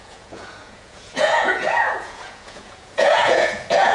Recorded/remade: remade